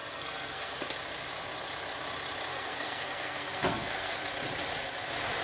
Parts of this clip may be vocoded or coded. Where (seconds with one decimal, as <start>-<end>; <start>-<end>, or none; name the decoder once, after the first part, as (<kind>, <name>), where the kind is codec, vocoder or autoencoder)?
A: 0.0-0.8 (codec, SNAC); 2.5-4.2